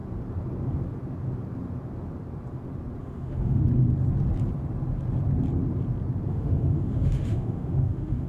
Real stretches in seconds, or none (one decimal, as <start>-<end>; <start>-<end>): 0.0-3.0; 3.6-6.3